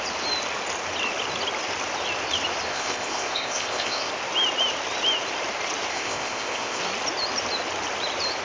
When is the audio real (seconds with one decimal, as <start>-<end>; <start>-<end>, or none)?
0.0-2.7; 4.1-5.9; 6.8-8.4